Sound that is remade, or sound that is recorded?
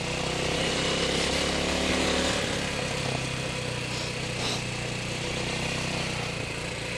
recorded